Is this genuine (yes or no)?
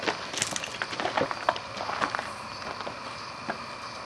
yes